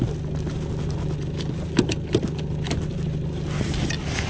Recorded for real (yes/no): yes